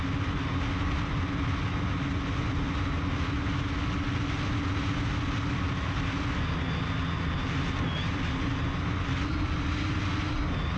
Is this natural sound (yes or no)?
yes